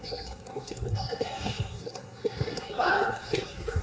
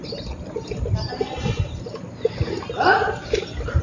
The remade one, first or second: first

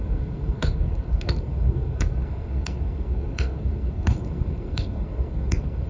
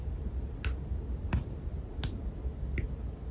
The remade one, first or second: first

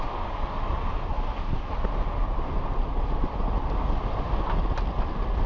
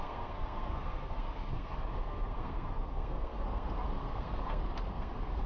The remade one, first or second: second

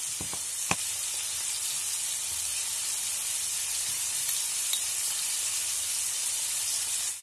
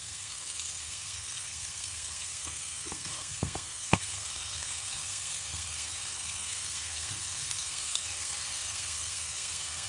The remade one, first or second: second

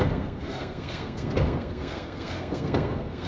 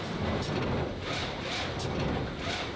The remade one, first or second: first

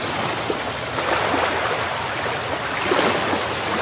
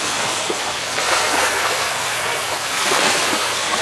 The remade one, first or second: second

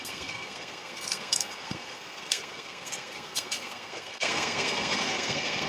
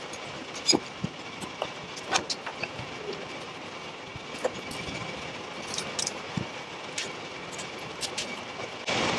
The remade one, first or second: first